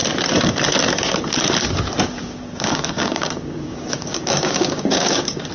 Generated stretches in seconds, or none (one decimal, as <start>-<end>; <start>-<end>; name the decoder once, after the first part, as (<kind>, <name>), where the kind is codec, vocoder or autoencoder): 2.2-5.5 (codec, DAC)